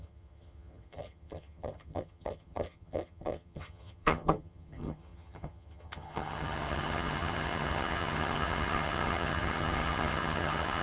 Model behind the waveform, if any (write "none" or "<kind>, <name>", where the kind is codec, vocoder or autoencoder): vocoder, HiFi-GAN